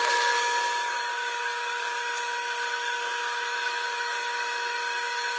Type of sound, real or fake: fake